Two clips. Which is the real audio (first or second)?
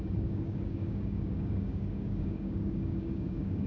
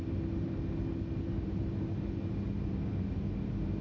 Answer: second